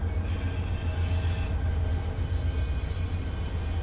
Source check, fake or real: real